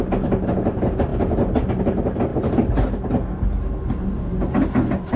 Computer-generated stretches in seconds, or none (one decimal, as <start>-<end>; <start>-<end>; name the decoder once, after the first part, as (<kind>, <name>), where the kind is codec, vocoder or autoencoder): none